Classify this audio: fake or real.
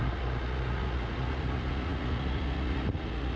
fake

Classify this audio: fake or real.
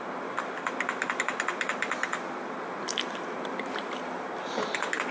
real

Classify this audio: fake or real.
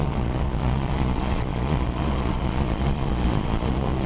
fake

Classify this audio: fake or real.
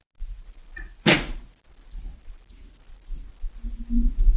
real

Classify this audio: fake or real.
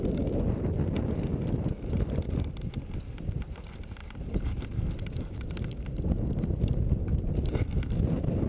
real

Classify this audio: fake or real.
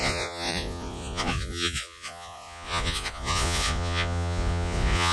fake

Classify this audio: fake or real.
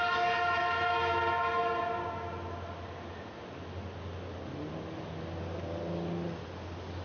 real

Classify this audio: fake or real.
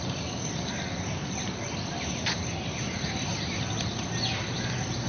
real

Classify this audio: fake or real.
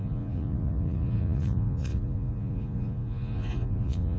fake